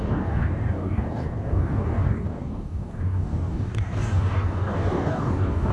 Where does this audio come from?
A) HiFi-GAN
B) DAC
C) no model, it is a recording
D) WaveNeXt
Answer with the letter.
B